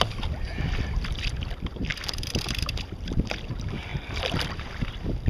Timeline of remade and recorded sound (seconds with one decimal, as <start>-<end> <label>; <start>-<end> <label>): 0.0-3.9 recorded; 3.9-5.3 remade